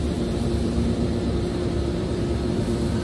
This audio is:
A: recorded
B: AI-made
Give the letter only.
B